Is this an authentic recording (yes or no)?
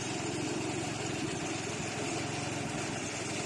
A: yes